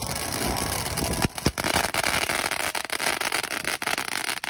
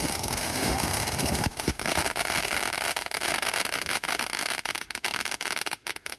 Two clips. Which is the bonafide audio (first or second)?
first